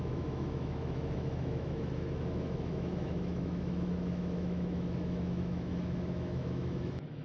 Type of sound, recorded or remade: remade